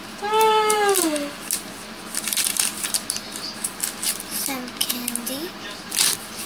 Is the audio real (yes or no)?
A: yes